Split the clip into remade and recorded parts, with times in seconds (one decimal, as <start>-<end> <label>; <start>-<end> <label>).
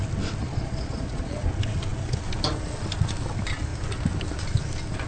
0.0-0.4 recorded; 0.4-1.5 remade; 1.5-5.1 recorded